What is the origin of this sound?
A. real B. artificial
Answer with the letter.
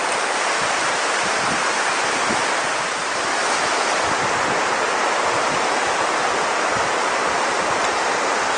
A